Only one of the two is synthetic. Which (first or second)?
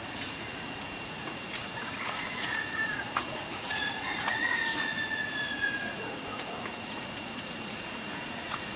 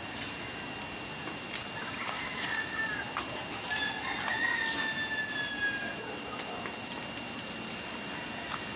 first